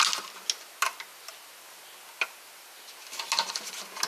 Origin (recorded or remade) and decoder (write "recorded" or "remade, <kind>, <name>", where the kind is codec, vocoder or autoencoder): recorded